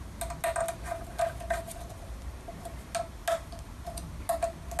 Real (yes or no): yes